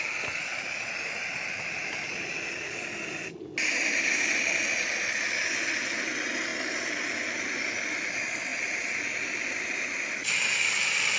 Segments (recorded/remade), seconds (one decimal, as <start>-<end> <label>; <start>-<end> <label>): 0.0-11.2 recorded